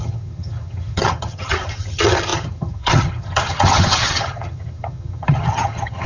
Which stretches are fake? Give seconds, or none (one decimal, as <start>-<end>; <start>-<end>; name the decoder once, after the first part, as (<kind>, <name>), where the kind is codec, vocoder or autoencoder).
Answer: 0.0-6.1 (vocoder, HiFi-GAN)